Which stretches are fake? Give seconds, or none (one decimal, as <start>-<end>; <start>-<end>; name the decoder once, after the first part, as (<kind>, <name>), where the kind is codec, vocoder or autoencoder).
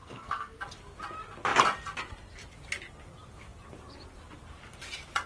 0.0-0.6 (codec, SNAC)